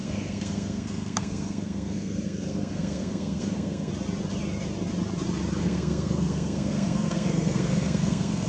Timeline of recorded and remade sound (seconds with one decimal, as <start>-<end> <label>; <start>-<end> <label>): 0.0-3.9 remade; 3.9-5.6 recorded; 5.6-8.5 remade